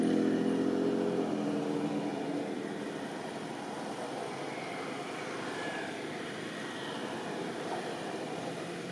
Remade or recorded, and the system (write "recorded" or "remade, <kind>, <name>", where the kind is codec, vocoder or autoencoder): recorded